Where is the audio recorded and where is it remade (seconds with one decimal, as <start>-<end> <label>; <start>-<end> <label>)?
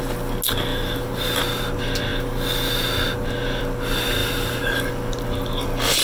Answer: 0.0-0.7 recorded; 0.7-1.4 remade; 1.4-4.2 recorded; 4.2-4.9 remade; 4.9-6.0 recorded